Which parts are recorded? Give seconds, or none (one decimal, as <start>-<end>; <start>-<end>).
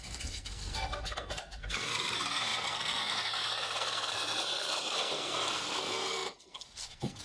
none